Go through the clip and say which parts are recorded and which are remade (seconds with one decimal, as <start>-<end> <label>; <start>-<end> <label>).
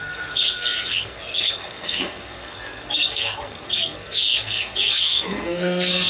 0.0-6.1 remade